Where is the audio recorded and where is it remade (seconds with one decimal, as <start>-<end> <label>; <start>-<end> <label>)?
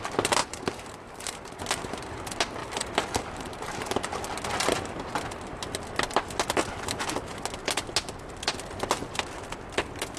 0.0-0.4 recorded; 0.4-1.6 remade; 1.6-2.6 recorded; 2.6-4.2 remade; 4.2-10.2 recorded